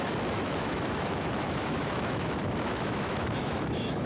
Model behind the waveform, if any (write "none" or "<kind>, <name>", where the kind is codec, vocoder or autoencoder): autoencoder, DAC-VAE